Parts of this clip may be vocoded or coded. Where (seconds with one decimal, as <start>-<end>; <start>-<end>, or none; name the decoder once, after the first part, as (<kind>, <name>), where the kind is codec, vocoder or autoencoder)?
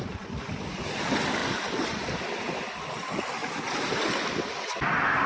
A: 0.0-3.4 (vocoder, BigVGAN v2)